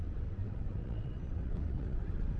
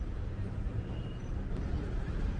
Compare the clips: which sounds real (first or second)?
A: second